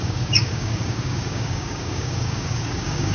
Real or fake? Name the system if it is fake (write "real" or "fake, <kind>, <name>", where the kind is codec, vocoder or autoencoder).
fake, codec, DAC